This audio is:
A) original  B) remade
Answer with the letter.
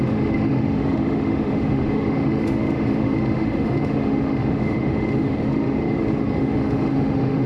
B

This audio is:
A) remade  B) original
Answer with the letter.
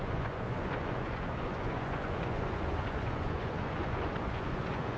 A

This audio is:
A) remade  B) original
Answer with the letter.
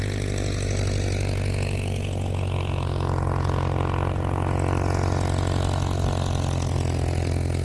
B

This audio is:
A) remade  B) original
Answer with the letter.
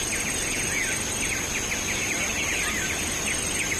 B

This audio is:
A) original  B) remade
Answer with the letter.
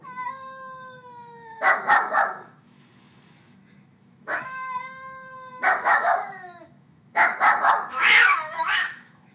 B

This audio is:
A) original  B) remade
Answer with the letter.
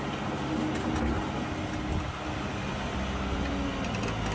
A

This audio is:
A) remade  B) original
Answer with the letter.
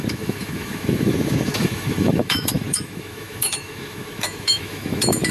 A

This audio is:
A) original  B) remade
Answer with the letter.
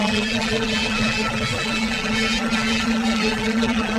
B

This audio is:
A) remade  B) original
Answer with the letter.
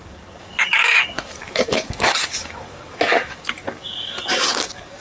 A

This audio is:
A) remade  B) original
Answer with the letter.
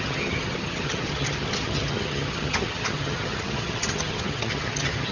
A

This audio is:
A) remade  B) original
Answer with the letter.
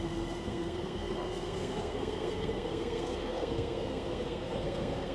A